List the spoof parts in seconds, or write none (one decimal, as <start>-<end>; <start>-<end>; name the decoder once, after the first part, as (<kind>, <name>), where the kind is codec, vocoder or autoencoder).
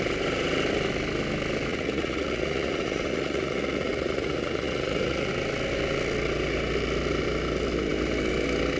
1.7-5.3 (vocoder, Vocos)